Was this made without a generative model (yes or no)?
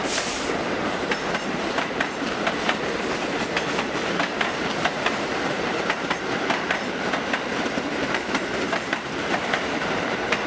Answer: no